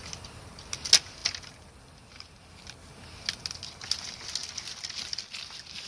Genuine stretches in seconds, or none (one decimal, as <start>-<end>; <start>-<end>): 0.0-5.9